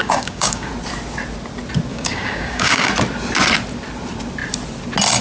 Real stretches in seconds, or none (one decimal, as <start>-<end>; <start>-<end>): 0.7-1.9; 2.9-5.2